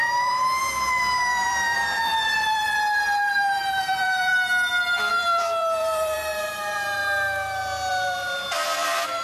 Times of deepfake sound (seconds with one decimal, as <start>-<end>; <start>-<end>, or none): 0.0-4.3; 5.1-7.0; 7.9-9.2